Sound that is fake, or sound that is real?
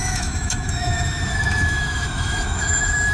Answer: fake